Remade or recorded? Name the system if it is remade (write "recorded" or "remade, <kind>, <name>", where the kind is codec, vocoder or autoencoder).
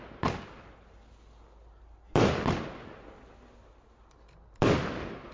recorded